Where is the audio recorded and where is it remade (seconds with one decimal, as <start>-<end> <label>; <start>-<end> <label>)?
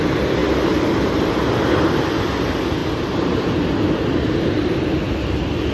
0.0-5.7 recorded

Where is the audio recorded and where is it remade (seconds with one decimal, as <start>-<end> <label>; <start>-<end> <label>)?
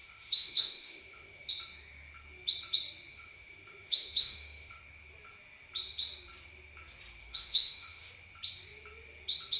0.0-1.5 remade; 1.5-3.1 recorded; 3.1-4.8 remade; 4.8-7.2 recorded; 7.2-8.1 remade; 8.1-9.6 recorded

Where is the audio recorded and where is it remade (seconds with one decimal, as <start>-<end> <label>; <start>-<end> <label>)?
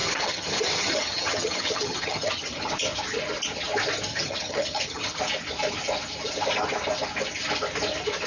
0.0-2.7 remade; 2.7-4.1 recorded; 4.1-5.2 remade; 5.2-8.3 recorded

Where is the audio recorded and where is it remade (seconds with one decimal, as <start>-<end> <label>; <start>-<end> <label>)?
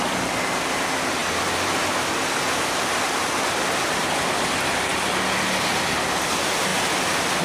0.0-7.4 recorded